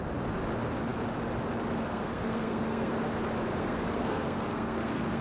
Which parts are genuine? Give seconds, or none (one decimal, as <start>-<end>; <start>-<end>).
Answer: 0.0-1.9; 3.0-3.5